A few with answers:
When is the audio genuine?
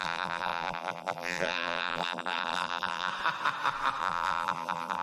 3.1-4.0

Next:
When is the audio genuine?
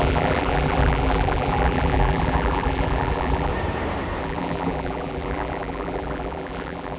3.5-4.2